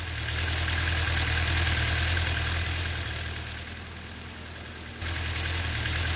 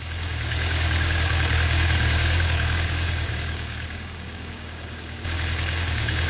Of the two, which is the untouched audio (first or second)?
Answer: first